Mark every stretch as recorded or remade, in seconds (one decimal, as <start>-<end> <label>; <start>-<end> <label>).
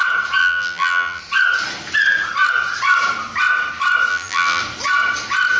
0.0-0.4 recorded; 0.4-1.2 remade; 1.2-4.1 recorded; 4.1-4.6 remade; 4.6-5.6 recorded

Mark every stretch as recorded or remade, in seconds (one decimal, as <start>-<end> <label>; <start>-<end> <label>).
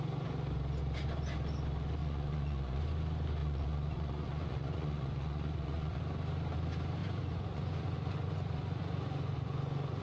0.0-2.0 recorded; 2.0-2.8 remade; 2.8-3.4 recorded; 3.4-6.0 remade; 6.0-7.0 recorded; 7.0-10.0 remade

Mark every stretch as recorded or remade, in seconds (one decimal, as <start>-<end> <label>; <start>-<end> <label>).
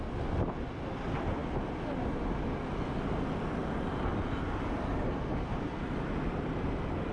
0.0-7.1 recorded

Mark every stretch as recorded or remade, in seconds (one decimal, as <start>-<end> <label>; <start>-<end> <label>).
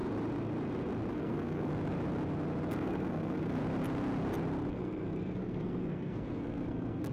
0.0-1.1 recorded; 1.1-1.7 remade; 1.7-2.7 recorded; 2.7-3.6 remade; 3.6-4.7 recorded; 4.7-7.1 remade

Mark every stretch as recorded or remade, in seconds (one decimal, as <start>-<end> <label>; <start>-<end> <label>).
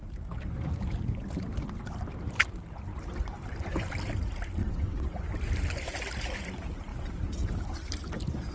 0.0-4.6 recorded; 4.6-5.2 remade; 5.2-8.5 recorded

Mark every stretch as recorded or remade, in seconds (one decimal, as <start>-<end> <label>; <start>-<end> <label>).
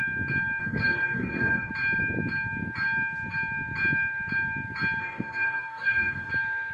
0.0-0.6 recorded; 0.6-1.7 remade; 1.7-5.0 recorded; 5.0-6.3 remade; 6.3-6.7 recorded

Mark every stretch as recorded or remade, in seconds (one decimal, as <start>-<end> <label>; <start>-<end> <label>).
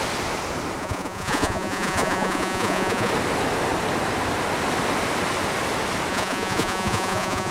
0.0-0.8 recorded; 0.8-3.1 remade; 3.1-6.1 recorded; 6.1-7.5 remade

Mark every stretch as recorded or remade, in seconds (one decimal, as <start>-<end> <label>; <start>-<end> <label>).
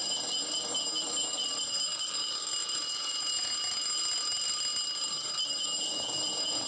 0.0-2.6 recorded; 2.6-3.5 remade; 3.5-5.9 recorded; 5.9-6.7 remade